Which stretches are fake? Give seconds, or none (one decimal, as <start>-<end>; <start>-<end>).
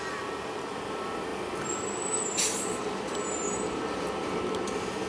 none